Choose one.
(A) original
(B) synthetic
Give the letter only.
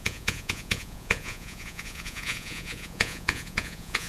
B